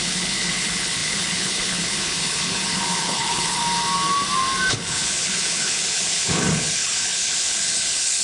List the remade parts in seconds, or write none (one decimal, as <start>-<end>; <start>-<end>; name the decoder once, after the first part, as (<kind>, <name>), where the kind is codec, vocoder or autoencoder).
0.0-3.6 (codec, HILCodec); 4.7-8.2